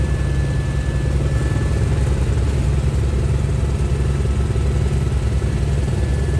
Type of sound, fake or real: real